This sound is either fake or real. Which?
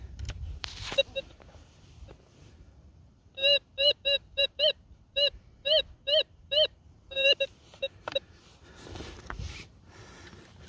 fake